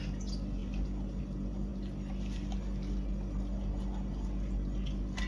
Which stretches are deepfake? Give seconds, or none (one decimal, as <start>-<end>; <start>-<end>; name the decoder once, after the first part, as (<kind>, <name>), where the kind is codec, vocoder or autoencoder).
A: none